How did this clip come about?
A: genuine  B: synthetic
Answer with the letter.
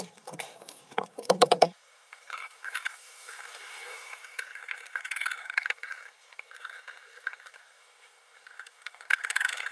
B